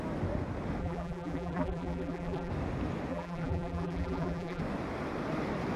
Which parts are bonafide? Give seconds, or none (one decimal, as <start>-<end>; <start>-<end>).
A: 0.0-0.8; 2.5-3.1; 4.6-5.8